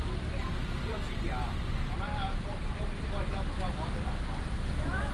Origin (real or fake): real